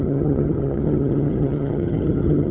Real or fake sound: fake